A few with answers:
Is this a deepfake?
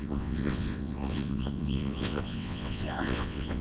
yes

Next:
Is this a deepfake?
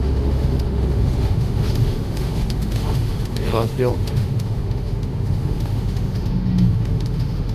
yes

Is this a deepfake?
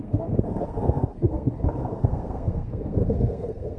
yes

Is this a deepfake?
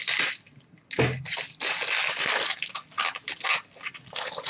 no